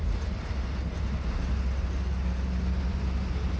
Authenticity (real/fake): real